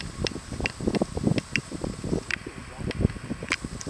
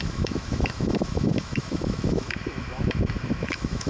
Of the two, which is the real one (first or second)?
first